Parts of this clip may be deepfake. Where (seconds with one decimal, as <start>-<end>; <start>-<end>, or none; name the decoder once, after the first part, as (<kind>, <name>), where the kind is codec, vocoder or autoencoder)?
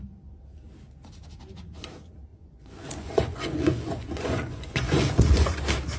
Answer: 2.3-5.6 (vocoder, Vocos)